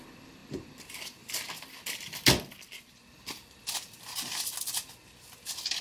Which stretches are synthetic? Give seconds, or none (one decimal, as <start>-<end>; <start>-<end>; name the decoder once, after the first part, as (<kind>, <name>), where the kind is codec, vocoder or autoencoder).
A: 0.4-3.5 (vocoder, BigVGAN v2)